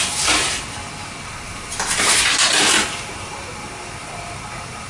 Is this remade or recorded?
recorded